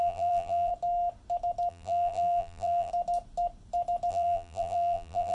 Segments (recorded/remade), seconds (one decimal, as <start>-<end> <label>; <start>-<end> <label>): 0.0-0.7 remade; 0.7-1.7 recorded; 1.7-2.9 remade; 2.9-4.1 recorded; 4.1-5.3 remade